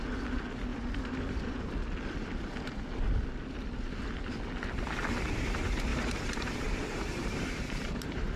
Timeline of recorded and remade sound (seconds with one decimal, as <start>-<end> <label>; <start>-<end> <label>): 0.0-0.7 recorded; 0.7-1.7 remade; 1.7-5.9 recorded; 5.9-8.4 remade